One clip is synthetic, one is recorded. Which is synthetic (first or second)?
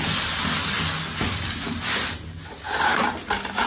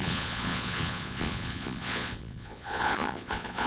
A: second